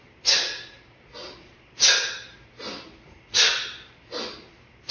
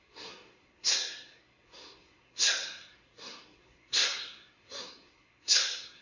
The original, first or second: first